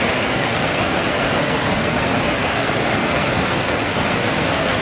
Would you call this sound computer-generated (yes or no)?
yes